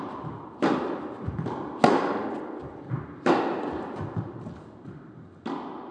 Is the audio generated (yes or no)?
no